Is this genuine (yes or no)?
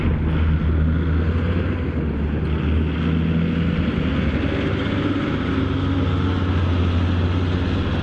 yes